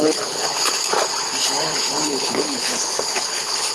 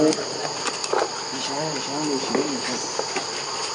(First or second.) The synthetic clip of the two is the first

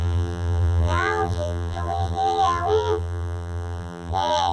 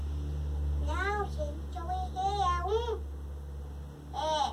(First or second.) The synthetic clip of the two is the first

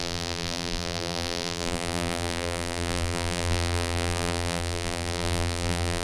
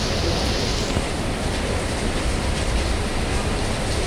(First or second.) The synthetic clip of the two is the first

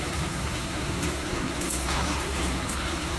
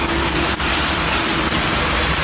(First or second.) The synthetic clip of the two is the first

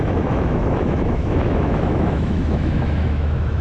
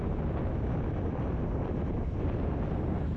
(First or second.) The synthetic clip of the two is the first